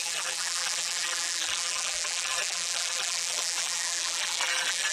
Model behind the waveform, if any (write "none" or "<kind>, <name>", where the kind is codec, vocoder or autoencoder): vocoder, BigVGAN v2